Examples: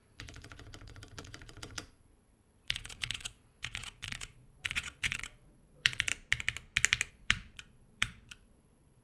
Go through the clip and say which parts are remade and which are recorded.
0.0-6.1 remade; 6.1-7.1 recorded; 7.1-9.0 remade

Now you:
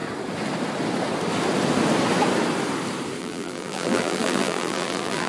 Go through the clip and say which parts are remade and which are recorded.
0.0-3.2 recorded; 3.2-5.3 remade

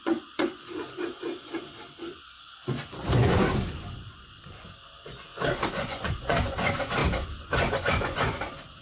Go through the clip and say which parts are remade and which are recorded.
0.0-8.8 remade

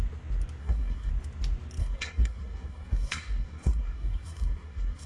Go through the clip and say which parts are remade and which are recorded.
0.0-0.6 recorded; 0.6-1.1 remade; 1.1-1.8 recorded; 1.8-5.1 remade

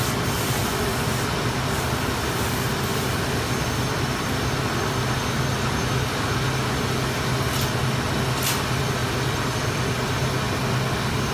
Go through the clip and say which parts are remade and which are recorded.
0.0-9.0 recorded; 9.0-10.4 remade; 10.4-11.3 recorded

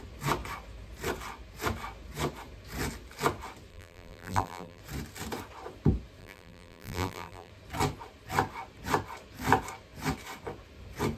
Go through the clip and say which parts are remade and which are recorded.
0.0-3.7 recorded; 3.7-4.8 remade; 4.8-6.2 recorded; 6.2-7.5 remade; 7.5-11.2 recorded